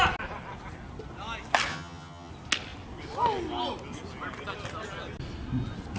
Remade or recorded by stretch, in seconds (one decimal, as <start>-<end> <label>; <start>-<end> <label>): 0.0-1.7 recorded; 1.7-2.3 remade; 2.3-6.0 recorded